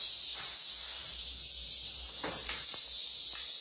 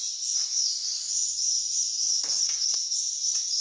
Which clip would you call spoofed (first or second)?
second